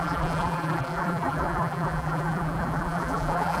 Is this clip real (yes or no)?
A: no